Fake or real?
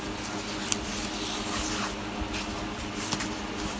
real